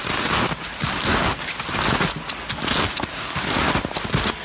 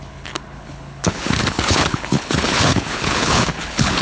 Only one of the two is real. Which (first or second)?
first